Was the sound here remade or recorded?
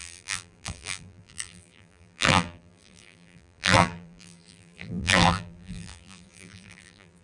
remade